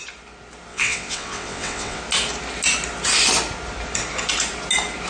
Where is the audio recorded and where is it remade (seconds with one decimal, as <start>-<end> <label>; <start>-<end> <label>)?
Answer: 0.0-0.7 recorded; 0.7-2.0 remade; 2.0-5.1 recorded